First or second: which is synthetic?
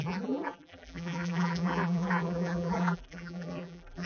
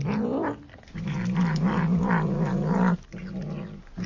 first